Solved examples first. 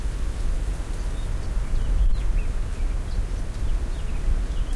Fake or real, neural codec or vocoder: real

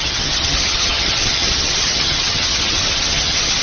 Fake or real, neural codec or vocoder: fake, vocoder, HiFi-GAN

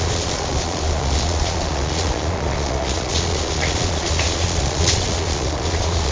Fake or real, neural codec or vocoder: fake, vocoder, Vocos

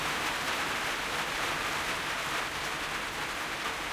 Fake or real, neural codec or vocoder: real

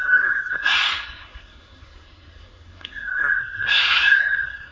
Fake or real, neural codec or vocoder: fake, codec, SNAC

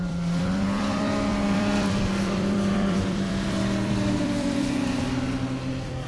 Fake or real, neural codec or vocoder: fake, vocoder, BigVGAN v2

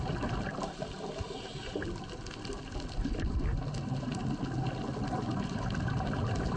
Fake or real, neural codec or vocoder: real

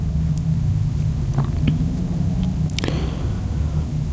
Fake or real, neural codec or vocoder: real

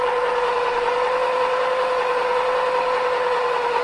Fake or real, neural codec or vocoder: real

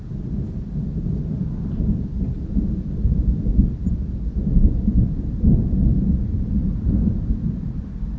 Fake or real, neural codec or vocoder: real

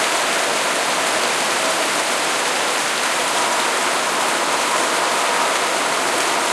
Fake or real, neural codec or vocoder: real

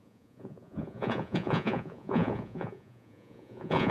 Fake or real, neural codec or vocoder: fake, vocoder, Vocos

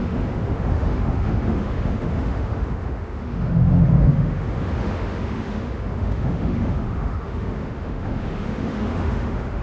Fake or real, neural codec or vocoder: fake, autoencoder, DAC-VAE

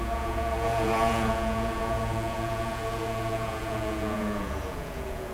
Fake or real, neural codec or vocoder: fake, vocoder, Vocos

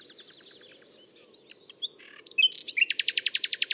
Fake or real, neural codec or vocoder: real